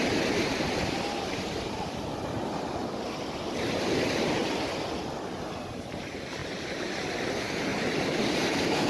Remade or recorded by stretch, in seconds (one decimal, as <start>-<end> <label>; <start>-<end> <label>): 0.0-2.1 remade; 2.1-3.6 recorded; 3.6-4.4 remade; 4.4-5.7 recorded; 5.7-7.7 remade; 7.7-8.3 recorded; 8.3-8.9 remade

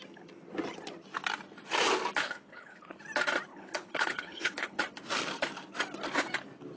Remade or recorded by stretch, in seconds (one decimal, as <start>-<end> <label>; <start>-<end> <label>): 0.0-2.2 recorded; 2.2-3.0 remade; 3.0-3.5 recorded; 3.5-4.8 remade; 4.8-6.8 recorded

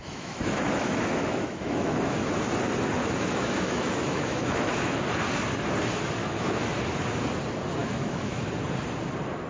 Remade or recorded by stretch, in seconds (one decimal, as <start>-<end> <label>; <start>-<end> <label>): 0.0-2.3 remade; 2.3-3.0 recorded; 3.0-5.0 remade; 5.0-6.2 recorded; 6.2-6.8 remade; 6.8-7.8 recorded; 7.8-8.4 remade; 8.4-9.5 recorded

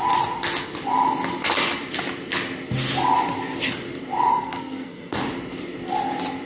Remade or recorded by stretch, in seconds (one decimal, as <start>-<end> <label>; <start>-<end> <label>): 0.0-4.3 recorded; 4.3-5.2 remade; 5.2-6.5 recorded

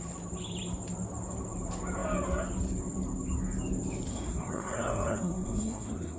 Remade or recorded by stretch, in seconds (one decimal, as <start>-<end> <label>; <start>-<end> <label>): 0.0-4.1 recorded; 4.1-6.2 remade

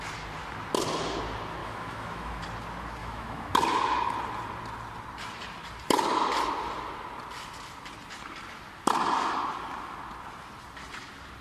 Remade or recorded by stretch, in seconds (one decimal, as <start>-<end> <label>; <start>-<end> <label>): 0.0-1.6 recorded; 1.6-2.4 remade; 2.4-3.0 recorded; 3.0-3.5 remade; 3.5-11.4 recorded